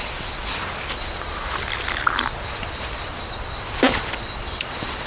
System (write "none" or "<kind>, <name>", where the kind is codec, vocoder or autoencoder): none